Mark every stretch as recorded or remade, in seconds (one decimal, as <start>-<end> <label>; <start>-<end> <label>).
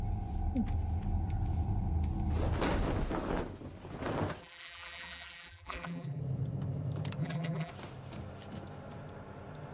0.0-4.4 recorded; 4.4-6.2 remade; 6.2-7.2 recorded; 7.2-7.7 remade; 7.7-9.7 recorded